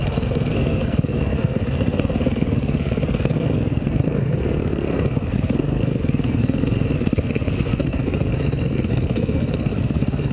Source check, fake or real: fake